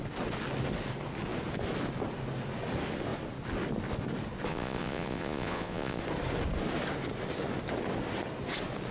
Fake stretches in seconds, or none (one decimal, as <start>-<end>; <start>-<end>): 4.5-6.0